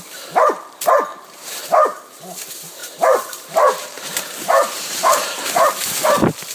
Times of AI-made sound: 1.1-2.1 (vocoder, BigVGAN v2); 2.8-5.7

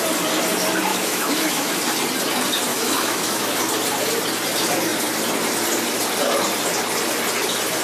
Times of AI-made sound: 0.9-1.7 (autoencoder, DAC-VAE); 2.7-3.6

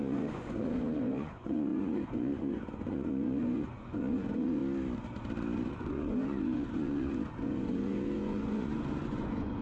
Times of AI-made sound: 0.0-4.6 (vocoder, Vocos); 5.7-9.6

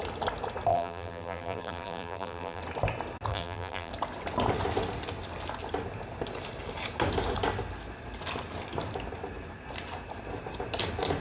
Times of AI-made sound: 0.7-2.6 (vocoder, BigVGAN v2); 3.3-3.9